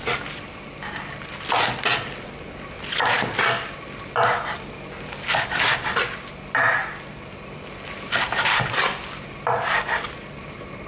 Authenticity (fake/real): real